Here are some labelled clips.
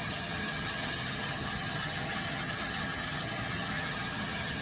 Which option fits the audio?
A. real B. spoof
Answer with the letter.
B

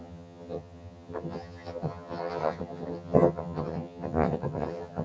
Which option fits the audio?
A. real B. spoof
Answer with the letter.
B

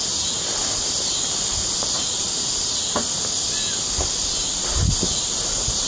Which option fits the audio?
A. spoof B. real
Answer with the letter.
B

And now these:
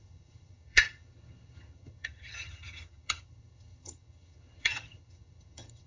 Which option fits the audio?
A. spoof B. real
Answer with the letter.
A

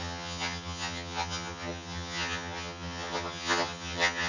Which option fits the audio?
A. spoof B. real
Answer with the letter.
A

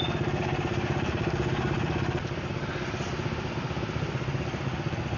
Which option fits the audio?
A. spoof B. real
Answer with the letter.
B